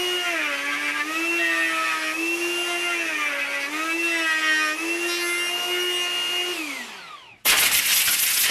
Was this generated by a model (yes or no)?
no